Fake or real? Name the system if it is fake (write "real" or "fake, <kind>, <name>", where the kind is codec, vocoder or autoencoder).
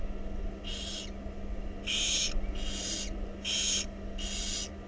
real